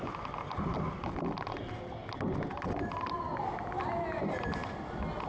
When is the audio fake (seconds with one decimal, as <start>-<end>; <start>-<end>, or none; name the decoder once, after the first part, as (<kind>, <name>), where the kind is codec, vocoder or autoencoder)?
none